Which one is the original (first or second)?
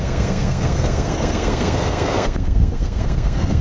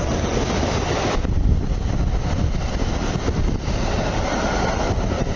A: second